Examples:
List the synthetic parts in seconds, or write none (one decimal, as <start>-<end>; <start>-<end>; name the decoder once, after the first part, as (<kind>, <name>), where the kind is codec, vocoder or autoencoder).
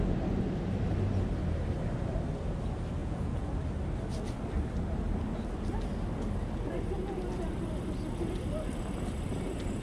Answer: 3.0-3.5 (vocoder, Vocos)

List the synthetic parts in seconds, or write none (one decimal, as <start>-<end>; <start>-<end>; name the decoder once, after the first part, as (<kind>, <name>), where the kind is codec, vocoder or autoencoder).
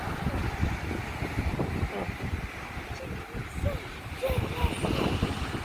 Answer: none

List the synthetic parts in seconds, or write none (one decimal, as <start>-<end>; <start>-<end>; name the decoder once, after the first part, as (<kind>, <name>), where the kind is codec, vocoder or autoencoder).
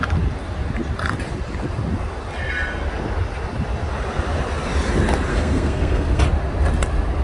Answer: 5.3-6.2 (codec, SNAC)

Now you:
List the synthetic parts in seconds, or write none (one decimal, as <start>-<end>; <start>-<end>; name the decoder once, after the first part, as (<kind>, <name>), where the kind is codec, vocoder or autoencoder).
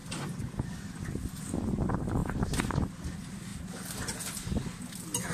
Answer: none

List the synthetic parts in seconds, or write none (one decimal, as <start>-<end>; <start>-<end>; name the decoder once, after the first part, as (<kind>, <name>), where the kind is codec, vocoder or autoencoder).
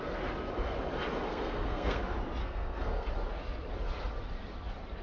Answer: 1.3-2.0 (codec, SNAC); 2.4-3.1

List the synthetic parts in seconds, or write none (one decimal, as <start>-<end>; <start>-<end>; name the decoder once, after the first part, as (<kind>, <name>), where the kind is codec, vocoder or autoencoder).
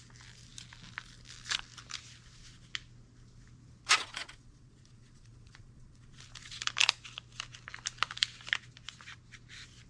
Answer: 4.0-6.2 (vocoder, Vocos)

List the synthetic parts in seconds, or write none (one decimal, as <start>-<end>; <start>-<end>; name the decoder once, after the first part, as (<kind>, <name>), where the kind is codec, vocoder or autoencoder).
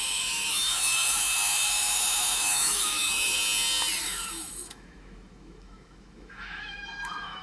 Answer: 0.0-3.4 (autoencoder, DAC-VAE); 4.0-7.4